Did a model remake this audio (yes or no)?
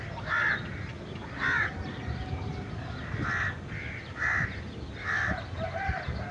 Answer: no